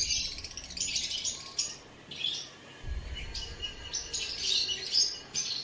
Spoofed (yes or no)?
no